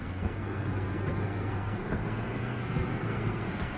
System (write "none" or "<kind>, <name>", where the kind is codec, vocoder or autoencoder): codec, SNAC